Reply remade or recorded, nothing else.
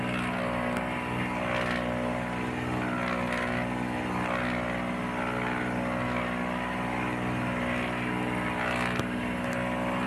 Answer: recorded